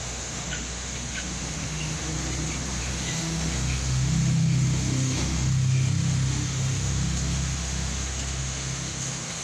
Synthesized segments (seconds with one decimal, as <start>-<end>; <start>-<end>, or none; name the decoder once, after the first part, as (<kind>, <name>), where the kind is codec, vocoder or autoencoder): 0.0-2.1 (autoencoder, DAC-VAE); 2.8-9.4